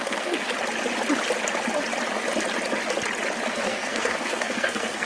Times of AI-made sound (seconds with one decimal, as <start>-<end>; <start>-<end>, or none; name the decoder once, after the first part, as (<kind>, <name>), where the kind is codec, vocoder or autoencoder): 0.0-0.5 (codec, SNAC); 3.5-5.0